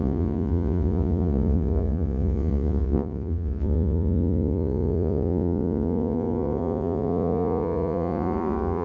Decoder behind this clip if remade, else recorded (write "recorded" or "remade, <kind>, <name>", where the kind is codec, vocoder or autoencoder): remade, vocoder, Vocos